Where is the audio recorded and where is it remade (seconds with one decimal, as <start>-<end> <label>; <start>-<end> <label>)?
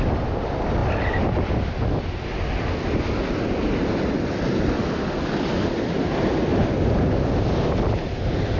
0.0-8.6 recorded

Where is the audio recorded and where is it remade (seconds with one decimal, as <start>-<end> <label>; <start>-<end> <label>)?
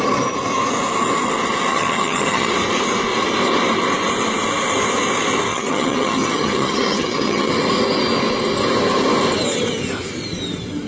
0.0-1.7 recorded; 1.7-2.5 remade; 2.5-5.5 recorded; 5.5-7.5 remade; 7.5-10.9 recorded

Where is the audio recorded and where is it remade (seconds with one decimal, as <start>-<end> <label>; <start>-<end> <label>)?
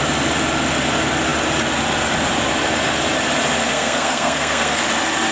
0.0-3.7 recorded; 3.7-4.8 remade; 4.8-5.3 recorded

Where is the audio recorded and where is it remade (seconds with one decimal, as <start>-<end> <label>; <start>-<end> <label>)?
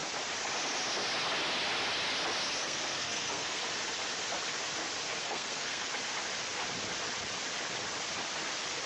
0.0-2.6 recorded; 2.6-3.6 remade; 3.6-5.2 recorded; 5.2-5.9 remade; 5.9-8.9 recorded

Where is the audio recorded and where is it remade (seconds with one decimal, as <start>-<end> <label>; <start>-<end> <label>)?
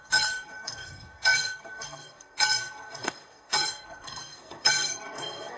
0.0-5.6 remade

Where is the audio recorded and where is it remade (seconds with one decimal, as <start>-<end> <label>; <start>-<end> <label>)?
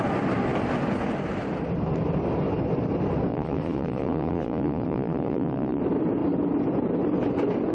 0.0-3.3 recorded; 3.3-5.8 remade; 5.8-7.7 recorded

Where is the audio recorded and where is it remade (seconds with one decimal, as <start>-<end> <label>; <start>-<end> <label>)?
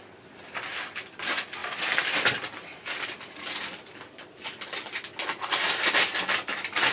0.0-6.9 recorded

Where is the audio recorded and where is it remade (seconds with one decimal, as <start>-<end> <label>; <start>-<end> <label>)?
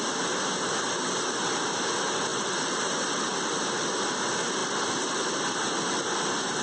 0.0-2.3 recorded; 2.3-3.5 remade; 3.5-4.6 recorded; 4.6-5.2 remade; 5.2-6.6 recorded